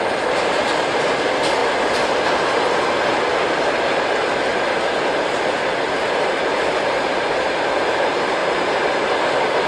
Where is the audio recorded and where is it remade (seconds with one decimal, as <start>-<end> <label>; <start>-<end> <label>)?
0.0-9.7 recorded